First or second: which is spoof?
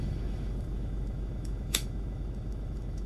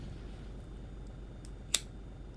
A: first